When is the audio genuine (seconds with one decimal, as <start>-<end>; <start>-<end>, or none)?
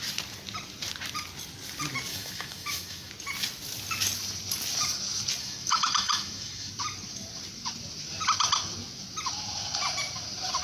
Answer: 0.0-2.1; 3.1-5.4; 6.7-10.6